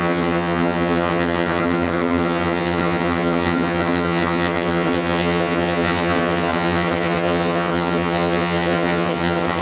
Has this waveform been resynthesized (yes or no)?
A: yes